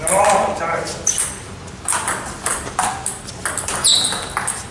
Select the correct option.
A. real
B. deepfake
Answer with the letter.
A